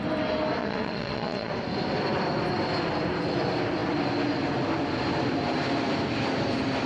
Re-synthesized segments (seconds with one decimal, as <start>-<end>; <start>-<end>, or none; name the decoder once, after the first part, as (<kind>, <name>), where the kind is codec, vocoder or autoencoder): 0.6-1.5 (vocoder, Vocos)